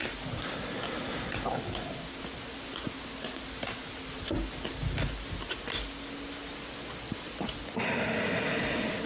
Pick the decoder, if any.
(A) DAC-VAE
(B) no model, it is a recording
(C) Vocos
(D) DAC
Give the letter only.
B